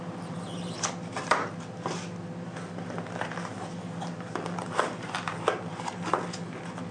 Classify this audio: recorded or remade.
recorded